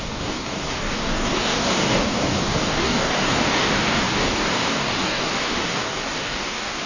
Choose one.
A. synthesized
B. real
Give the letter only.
A